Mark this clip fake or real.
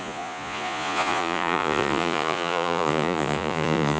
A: fake